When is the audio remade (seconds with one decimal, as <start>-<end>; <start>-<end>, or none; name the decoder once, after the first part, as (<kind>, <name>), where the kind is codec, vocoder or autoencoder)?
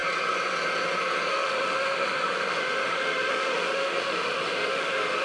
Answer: 1.3-5.2 (autoencoder, DAC-VAE)